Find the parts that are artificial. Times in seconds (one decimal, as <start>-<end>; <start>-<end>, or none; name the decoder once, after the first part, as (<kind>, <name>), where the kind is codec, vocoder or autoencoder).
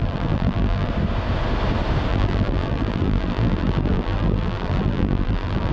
0.0-0.9 (vocoder, BigVGAN v2); 2.1-5.7